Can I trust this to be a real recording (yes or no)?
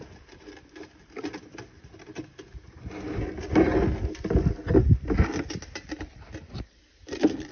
yes